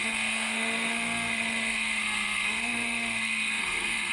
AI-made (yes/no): yes